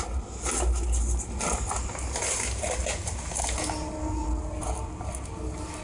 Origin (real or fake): real